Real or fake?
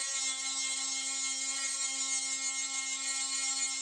real